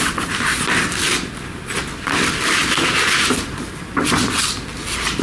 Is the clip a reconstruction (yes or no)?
no